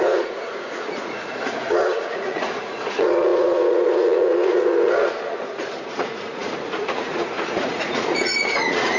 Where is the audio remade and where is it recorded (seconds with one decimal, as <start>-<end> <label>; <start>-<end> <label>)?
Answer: 0.0-9.0 remade